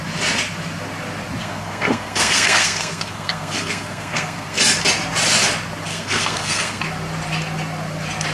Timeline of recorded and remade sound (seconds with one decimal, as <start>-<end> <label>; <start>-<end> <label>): 0.0-1.4 recorded; 1.4-4.6 remade; 4.6-5.9 recorded; 5.9-6.8 remade; 6.8-8.3 recorded